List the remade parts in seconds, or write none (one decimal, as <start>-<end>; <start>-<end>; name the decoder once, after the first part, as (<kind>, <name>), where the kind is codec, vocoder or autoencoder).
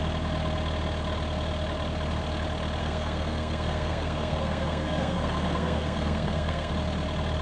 2.8-6.7 (codec, SNAC)